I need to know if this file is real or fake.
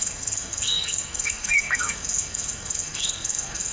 fake